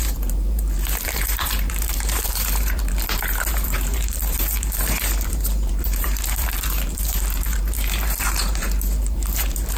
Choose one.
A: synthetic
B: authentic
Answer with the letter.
A